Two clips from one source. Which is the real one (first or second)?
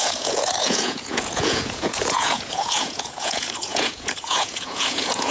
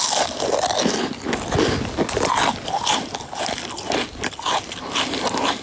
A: second